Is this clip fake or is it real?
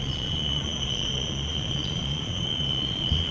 fake